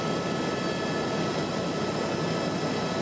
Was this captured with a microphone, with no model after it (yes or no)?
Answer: yes